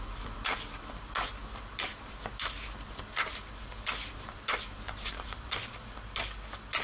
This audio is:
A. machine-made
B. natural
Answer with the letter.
B